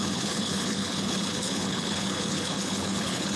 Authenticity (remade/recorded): remade